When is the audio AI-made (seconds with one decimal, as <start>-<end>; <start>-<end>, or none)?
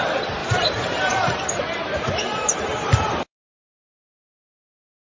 0.4-3.5